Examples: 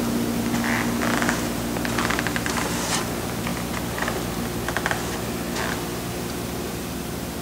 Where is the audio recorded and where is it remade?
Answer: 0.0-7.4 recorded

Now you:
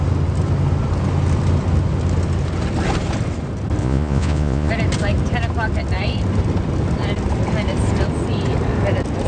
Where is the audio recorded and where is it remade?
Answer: 0.0-3.8 recorded; 3.8-4.7 remade; 4.7-9.3 recorded

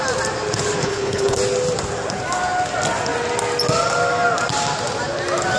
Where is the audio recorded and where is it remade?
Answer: 0.0-0.8 recorded; 0.8-1.4 remade; 1.4-5.6 recorded